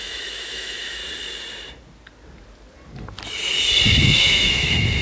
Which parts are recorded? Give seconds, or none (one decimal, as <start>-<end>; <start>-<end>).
1.0-4.0